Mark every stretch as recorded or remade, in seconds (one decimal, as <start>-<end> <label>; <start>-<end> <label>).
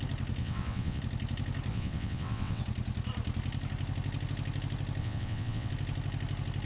0.0-0.4 recorded; 0.4-1.0 remade; 1.0-1.7 recorded; 1.7-2.6 remade; 2.6-5.0 recorded; 5.0-5.7 remade; 5.7-6.6 recorded